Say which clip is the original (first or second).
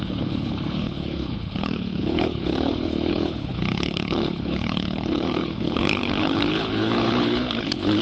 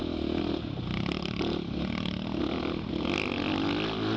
second